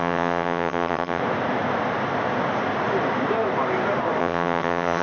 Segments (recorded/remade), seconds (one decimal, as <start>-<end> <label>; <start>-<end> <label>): 0.0-1.2 remade; 1.2-4.2 recorded; 4.2-5.0 remade